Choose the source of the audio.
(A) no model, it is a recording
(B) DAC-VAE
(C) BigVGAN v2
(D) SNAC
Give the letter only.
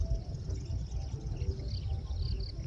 A